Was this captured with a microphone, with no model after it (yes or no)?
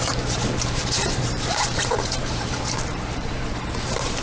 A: no